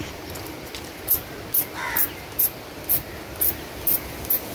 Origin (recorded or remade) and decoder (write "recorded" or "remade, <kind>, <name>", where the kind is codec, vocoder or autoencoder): remade, vocoder, BigVGAN v2